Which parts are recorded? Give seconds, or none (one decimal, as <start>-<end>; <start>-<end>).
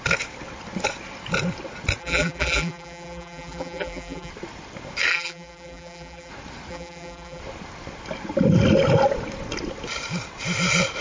0.0-2.0; 4.3-5.1; 6.3-6.7; 7.4-11.0